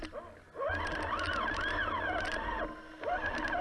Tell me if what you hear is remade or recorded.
recorded